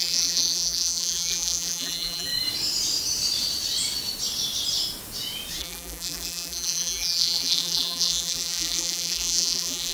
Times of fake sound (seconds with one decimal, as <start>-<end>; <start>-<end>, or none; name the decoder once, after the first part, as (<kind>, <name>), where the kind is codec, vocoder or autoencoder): 0.0-2.3 (vocoder, BigVGAN v2); 5.6-9.9